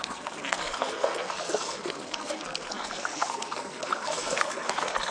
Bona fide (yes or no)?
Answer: no